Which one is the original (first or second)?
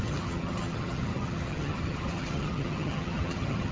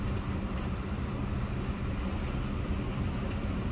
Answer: second